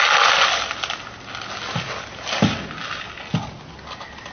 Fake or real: real